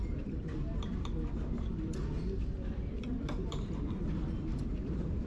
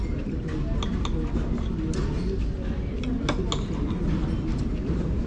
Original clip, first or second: second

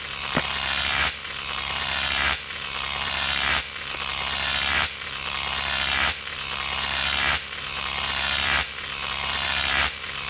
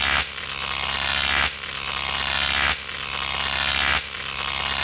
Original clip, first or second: second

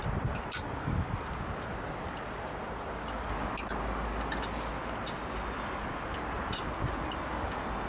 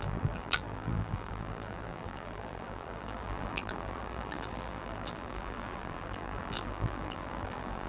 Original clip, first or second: first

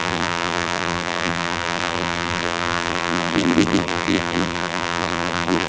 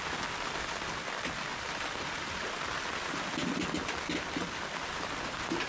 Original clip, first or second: second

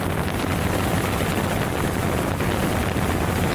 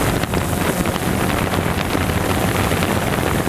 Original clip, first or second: first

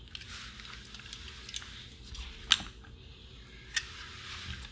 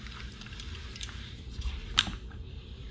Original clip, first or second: first